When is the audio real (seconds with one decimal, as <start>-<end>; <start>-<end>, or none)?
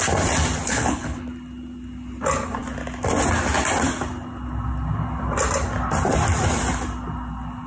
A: 0.0-0.7; 1.3-7.7